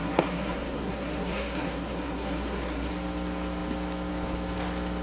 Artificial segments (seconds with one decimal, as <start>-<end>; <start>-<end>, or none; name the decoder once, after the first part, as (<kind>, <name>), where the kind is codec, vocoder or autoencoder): 0.0-2.9 (codec, SNAC)